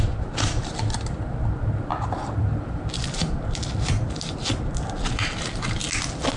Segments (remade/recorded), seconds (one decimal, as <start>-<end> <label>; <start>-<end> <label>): 0.0-1.9 recorded; 1.9-5.4 remade; 5.4-6.4 recorded